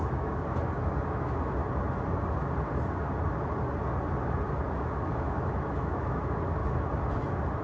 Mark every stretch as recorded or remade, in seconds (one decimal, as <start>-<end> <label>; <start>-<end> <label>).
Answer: 0.0-1.6 remade; 1.6-4.8 recorded; 4.8-6.6 remade; 6.6-7.6 recorded